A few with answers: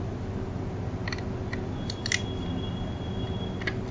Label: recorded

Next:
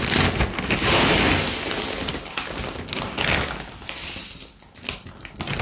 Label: recorded